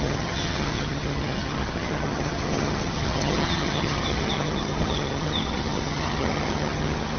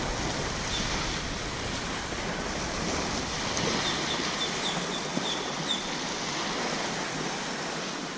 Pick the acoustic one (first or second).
second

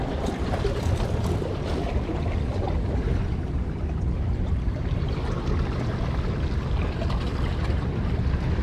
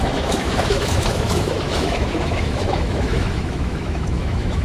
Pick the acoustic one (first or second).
first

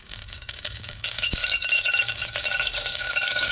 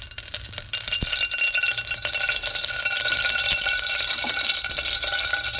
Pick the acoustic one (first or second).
second